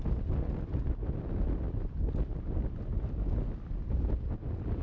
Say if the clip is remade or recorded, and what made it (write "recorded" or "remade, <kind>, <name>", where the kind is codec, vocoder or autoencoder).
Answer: recorded